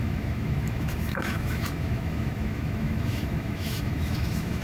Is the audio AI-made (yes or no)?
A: yes